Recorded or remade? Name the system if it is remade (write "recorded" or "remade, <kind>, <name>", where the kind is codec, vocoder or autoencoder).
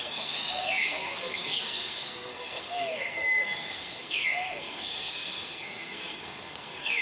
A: remade, codec, SNAC